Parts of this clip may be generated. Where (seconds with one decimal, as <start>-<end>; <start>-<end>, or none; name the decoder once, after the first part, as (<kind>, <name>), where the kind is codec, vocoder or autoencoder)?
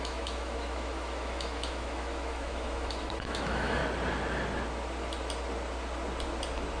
0.0-3.8 (autoencoder, DAC-VAE)